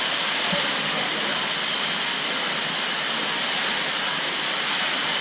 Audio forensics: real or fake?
real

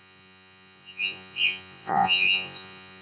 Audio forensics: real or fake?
fake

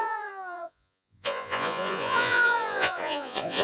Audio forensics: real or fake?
fake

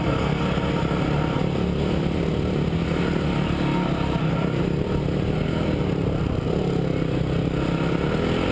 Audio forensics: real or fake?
real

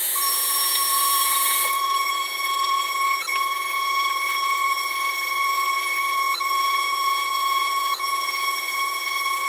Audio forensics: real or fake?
fake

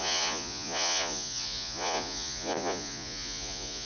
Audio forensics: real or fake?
fake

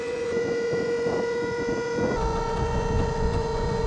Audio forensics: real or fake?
fake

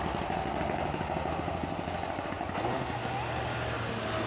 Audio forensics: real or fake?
real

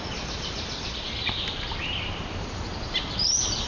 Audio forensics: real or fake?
real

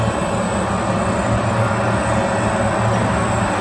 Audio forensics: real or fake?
real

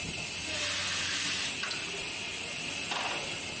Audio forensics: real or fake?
real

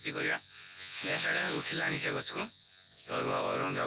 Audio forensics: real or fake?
fake